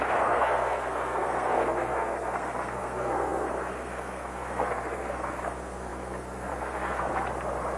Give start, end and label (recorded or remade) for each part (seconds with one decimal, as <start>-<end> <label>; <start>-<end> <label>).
0.0-7.1 remade; 7.1-7.8 recorded